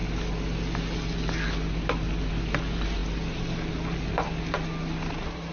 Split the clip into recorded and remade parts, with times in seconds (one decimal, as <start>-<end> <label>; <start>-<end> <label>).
0.0-5.5 recorded